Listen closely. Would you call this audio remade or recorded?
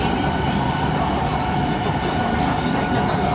recorded